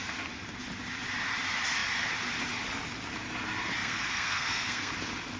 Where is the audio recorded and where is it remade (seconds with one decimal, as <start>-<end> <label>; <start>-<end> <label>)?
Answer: 0.0-3.8 recorded; 3.8-4.9 remade; 4.9-5.4 recorded